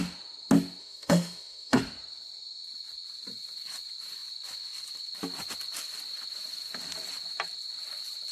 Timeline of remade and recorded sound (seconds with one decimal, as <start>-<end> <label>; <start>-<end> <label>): 0.0-0.8 recorded; 0.8-1.8 remade; 1.8-8.3 recorded